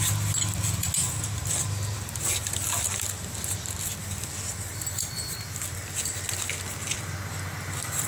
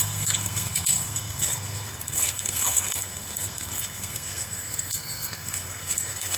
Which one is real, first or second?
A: first